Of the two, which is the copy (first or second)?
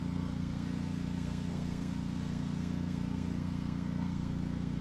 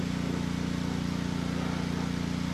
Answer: first